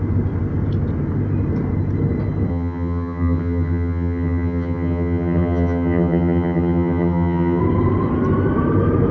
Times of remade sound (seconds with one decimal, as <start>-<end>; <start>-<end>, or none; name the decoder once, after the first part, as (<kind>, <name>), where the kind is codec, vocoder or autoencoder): 2.5-7.6 (vocoder, HiFi-GAN)